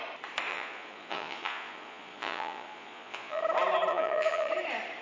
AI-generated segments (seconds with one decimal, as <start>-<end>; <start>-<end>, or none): 0.5-3.4; 3.9-4.5